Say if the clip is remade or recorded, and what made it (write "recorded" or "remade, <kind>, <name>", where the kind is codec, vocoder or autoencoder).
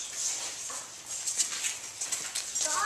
recorded